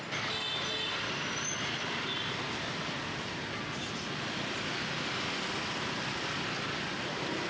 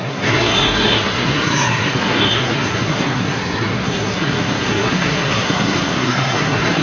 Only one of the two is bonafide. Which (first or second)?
first